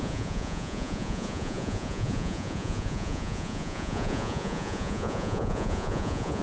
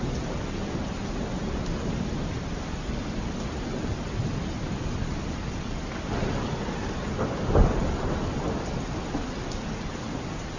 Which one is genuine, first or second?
second